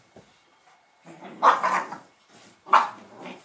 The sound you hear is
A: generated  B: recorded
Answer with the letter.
A